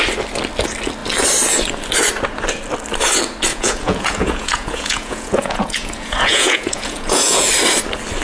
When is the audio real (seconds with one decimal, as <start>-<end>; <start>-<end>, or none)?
0.0-3.5; 7.5-8.2